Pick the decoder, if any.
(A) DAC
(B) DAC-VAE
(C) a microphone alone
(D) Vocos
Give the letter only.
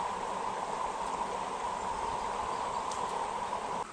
C